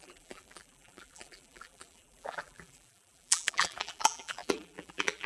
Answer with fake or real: fake